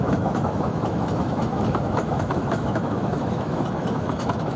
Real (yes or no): no